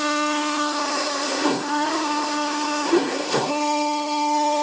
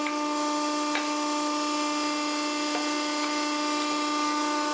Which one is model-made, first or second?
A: first